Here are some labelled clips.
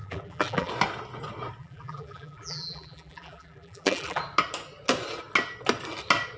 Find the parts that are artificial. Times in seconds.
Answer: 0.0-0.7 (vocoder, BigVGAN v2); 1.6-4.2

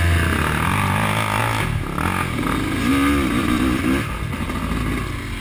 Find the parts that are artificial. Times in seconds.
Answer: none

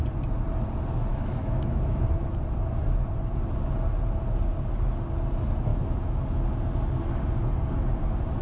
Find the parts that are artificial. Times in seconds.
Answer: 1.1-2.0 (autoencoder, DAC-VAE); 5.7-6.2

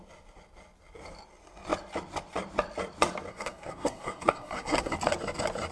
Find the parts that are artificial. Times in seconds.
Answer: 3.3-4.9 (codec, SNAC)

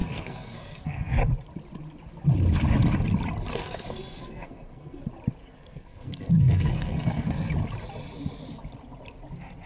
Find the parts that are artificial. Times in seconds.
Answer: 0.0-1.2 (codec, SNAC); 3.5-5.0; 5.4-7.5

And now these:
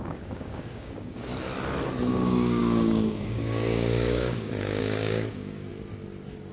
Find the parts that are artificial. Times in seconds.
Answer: 0.0-1.3 (codec, DAC); 2.1-5.7

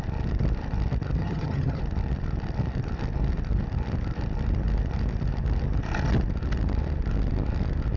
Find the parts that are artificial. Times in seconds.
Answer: 1.2-1.8 (vocoder, HiFi-GAN)

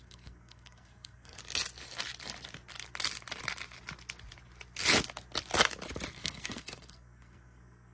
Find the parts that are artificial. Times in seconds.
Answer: 0.0-1.4 (codec, SNAC); 6.1-7.9